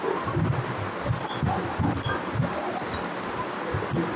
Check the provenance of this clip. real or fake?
real